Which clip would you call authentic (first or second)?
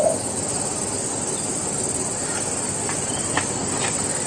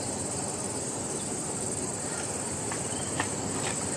first